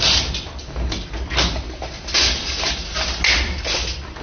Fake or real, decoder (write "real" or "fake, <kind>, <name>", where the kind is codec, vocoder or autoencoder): real